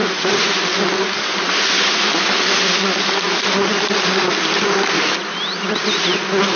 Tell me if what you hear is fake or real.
real